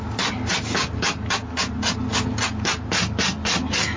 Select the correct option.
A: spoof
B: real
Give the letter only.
B